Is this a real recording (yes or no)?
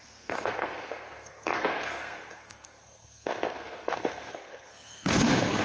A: no